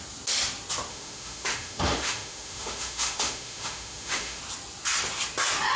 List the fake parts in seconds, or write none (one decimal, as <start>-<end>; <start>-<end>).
0.9-4.4